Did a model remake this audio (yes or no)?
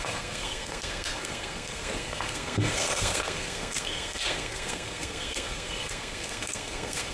yes